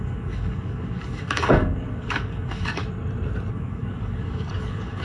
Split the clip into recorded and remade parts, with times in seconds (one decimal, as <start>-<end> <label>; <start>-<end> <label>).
0.0-2.8 remade; 2.8-3.5 recorded; 3.5-5.0 remade